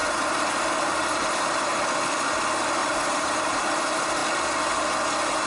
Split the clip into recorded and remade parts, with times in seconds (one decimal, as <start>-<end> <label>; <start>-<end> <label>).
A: 0.0-1.8 remade; 1.8-2.8 recorded; 2.8-3.7 remade; 3.7-5.5 recorded